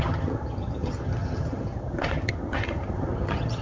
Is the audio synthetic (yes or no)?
yes